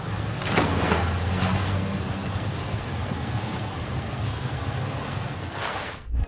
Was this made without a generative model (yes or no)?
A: no